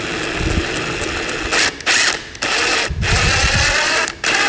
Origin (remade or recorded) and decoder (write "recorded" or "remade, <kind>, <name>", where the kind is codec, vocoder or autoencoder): recorded